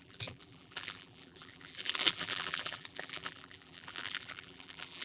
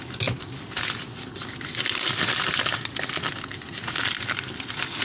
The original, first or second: second